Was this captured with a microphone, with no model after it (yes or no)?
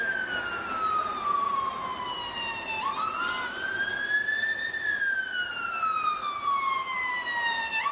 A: yes